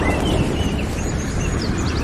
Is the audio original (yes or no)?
no